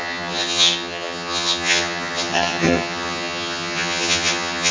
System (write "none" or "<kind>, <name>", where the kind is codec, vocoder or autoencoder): vocoder, HiFi-GAN